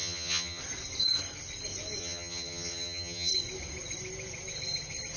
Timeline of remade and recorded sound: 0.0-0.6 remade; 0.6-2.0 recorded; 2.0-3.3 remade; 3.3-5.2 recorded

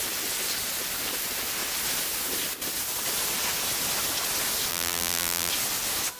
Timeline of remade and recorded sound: 0.0-4.7 recorded; 4.7-5.5 remade; 5.5-6.2 recorded

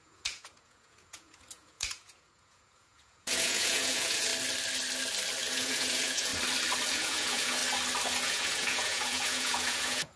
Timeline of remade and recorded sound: 0.0-4.3 remade; 4.3-5.5 recorded; 5.5-6.3 remade; 6.3-6.9 recorded; 6.9-7.6 remade; 7.6-8.2 recorded; 8.2-10.2 remade

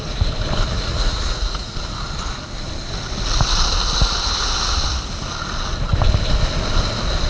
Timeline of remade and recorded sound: 0.0-0.7 recorded; 0.7-1.7 remade; 1.7-7.3 recorded

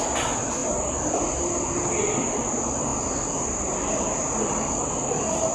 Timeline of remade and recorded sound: 0.0-5.5 recorded

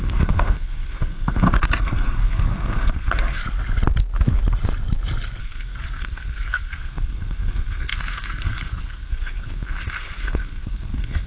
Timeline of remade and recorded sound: 0.0-3.4 remade; 3.4-5.4 recorded; 5.4-11.3 remade